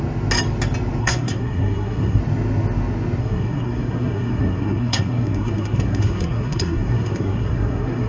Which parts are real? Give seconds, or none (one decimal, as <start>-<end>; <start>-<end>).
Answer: 0.0-1.0; 2.2-3.2